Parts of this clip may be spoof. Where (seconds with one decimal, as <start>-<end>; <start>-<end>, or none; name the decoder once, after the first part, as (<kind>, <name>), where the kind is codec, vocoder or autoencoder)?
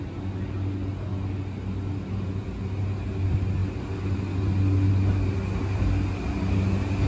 none